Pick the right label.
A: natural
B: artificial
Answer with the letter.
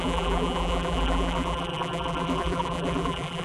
B